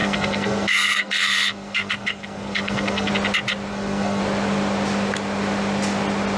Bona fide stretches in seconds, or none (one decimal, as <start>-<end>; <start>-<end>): 3.1-3.7; 4.2-6.4